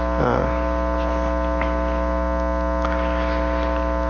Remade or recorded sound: recorded